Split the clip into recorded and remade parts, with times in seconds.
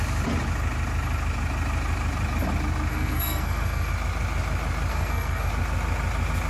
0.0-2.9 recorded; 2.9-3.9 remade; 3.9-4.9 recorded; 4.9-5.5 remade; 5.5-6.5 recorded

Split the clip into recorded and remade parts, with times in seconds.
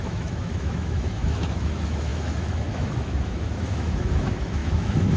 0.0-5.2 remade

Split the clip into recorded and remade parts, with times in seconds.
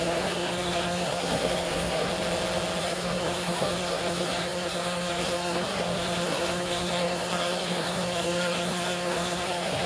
0.0-2.1 remade; 2.1-2.8 recorded; 2.8-9.9 remade